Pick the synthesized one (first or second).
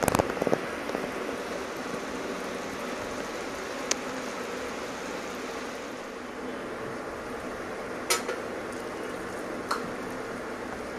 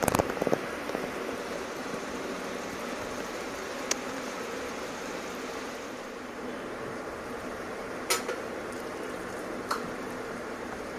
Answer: second